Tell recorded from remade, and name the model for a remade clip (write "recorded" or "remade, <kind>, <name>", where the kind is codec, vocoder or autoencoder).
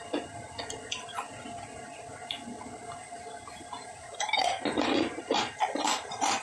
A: recorded